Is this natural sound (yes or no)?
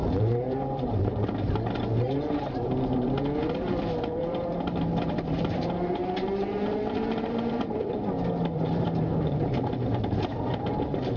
no